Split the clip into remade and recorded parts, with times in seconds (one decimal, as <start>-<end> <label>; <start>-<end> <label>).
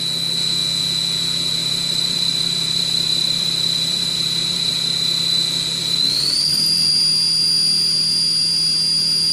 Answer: 0.0-1.6 recorded; 1.6-4.7 remade; 4.7-5.8 recorded; 5.8-6.9 remade; 6.9-9.3 recorded